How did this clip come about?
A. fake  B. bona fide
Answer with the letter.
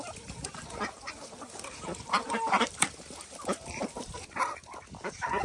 A